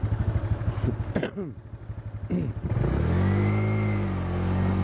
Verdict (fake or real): real